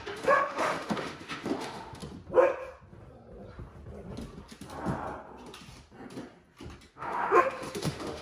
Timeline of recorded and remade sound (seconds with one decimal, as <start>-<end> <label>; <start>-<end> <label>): 0.0-2.0 remade; 2.0-6.9 recorded; 6.9-8.2 remade